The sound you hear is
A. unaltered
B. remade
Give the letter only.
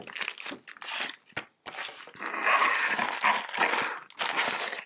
A